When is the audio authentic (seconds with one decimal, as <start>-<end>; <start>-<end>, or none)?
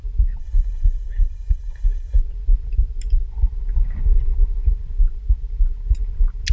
0.0-0.4; 2.2-6.5